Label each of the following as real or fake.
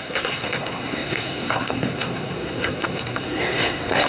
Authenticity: fake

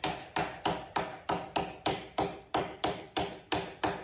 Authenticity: fake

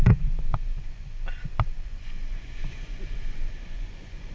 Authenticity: fake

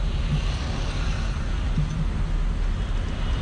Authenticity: real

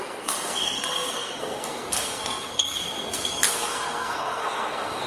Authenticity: fake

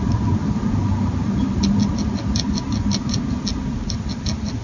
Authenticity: real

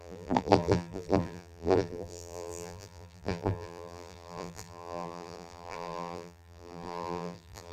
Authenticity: fake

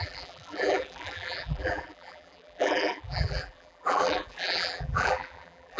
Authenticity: fake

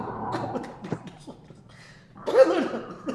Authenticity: fake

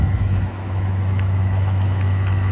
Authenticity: fake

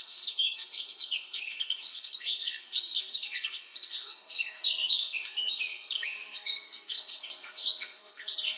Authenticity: fake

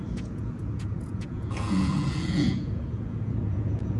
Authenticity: fake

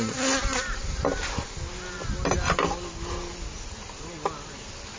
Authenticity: real